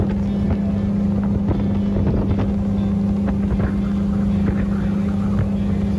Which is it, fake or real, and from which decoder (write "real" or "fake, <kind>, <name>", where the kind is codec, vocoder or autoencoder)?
real